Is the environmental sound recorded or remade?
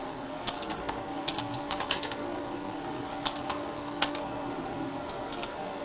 remade